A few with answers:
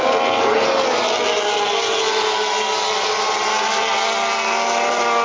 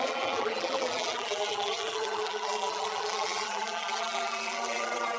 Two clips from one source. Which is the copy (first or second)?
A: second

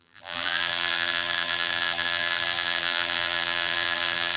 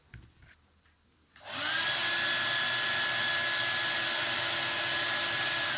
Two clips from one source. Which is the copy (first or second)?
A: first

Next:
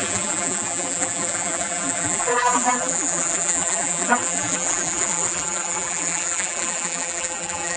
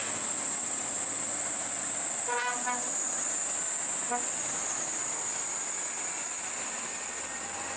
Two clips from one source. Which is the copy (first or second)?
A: first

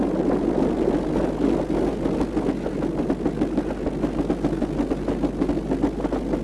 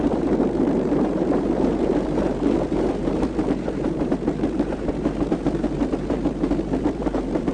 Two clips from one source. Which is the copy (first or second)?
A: second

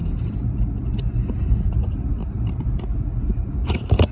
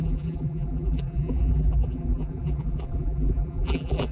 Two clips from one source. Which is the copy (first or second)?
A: second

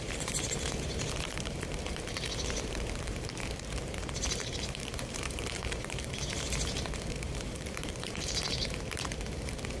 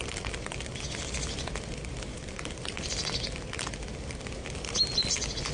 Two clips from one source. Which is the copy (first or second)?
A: first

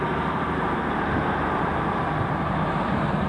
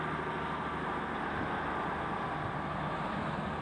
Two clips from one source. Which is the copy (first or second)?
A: first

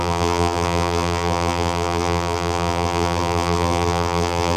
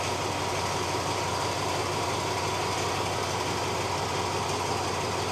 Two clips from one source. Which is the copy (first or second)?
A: first